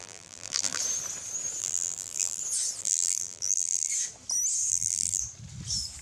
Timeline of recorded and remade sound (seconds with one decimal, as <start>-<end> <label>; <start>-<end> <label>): 0.0-0.8 remade; 0.8-1.6 recorded; 1.6-2.4 remade; 2.4-2.8 recorded; 2.8-3.9 remade; 3.9-4.7 recorded; 4.7-5.2 remade; 5.2-6.0 recorded